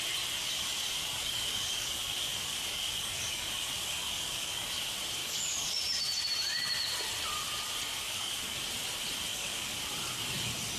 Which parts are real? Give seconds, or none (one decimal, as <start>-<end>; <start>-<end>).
0.0-1.0; 4.7-5.2; 5.8-7.9; 8.6-9.3; 9.8-10.8